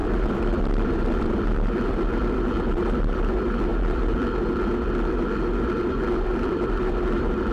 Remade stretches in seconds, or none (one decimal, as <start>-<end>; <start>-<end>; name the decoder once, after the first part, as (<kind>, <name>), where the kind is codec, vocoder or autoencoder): 0.0-7.5 (vocoder, BigVGAN v2)